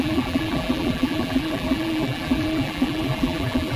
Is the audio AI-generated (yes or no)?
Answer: yes